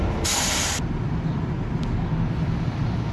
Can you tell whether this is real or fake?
real